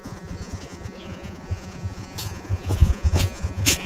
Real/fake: fake